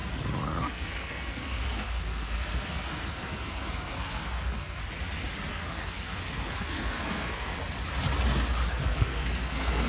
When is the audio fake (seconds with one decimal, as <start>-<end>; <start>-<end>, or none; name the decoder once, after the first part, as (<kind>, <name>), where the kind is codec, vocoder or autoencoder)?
0.6-4.8 (codec, SNAC); 5.5-7.6; 8.8-9.9